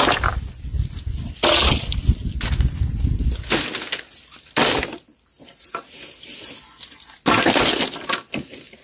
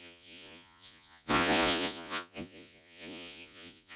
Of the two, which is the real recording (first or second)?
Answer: first